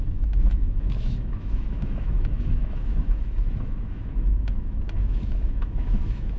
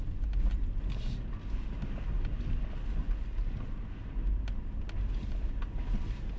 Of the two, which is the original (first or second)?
second